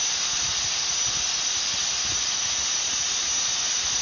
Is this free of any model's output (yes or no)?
yes